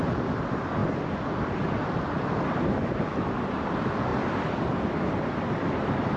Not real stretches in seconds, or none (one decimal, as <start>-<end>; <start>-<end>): 0.8-3.2; 4.1-5.7

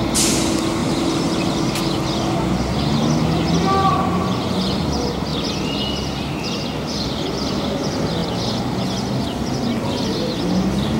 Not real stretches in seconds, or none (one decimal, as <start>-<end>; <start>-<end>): 0.8-1.6

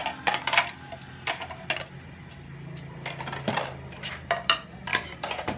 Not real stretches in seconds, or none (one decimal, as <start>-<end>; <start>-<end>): 4.9-5.6

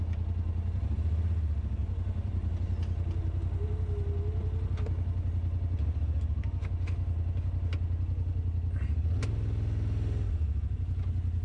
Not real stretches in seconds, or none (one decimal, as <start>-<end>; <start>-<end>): 1.8-2.5

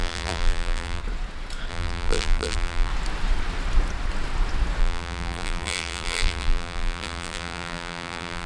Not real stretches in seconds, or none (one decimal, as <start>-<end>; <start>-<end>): 0.0-1.0; 1.7-2.9; 4.8-8.5

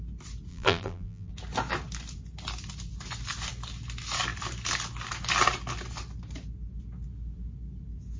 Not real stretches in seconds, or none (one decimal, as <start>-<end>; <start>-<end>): 0.5-1.3